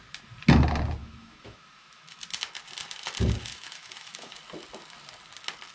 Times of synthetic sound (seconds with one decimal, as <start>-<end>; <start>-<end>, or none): 1.0-2.2; 3.5-4.3